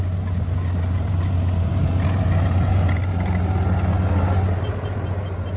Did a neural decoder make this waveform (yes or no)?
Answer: no